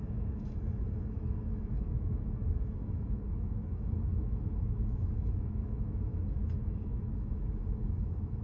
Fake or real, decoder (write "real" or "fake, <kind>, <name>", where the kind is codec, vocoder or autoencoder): fake, autoencoder, DAC-VAE